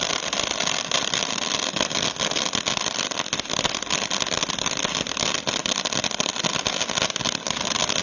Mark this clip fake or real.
real